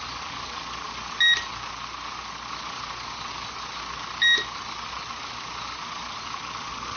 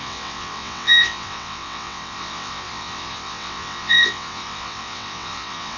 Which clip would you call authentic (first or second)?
first